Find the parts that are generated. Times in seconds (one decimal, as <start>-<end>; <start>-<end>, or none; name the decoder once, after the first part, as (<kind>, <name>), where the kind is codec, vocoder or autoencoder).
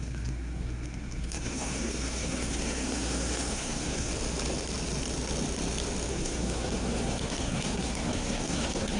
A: 0.0-4.1 (codec, SNAC); 6.1-9.0